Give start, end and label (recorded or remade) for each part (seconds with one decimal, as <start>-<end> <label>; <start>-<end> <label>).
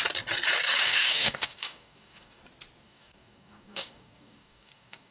0.0-0.8 recorded; 0.8-2.4 remade; 2.4-2.8 recorded; 2.8-5.1 remade